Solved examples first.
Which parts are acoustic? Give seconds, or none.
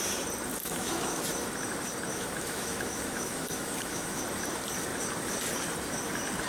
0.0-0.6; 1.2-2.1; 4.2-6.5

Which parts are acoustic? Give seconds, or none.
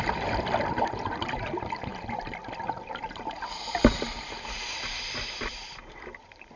1.9-4.8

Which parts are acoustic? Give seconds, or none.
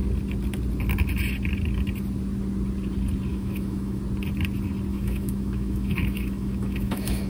0.0-3.3; 4.0-4.9